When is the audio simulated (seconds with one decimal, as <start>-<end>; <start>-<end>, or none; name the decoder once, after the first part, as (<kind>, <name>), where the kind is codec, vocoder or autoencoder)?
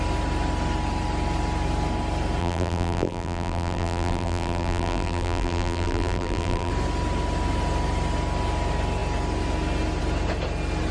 2.4-6.7 (vocoder, BigVGAN v2)